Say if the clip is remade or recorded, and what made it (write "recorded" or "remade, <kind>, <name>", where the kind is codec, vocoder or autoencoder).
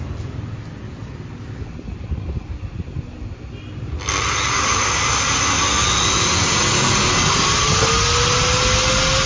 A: recorded